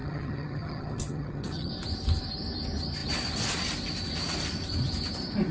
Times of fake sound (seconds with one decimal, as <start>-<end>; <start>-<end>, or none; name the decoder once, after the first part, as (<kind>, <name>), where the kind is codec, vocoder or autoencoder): 0.0-1.7 (vocoder, HiFi-GAN)